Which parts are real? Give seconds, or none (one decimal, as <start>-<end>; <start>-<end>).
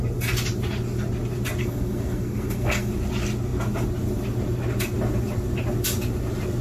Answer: 0.0-1.6; 2.9-6.6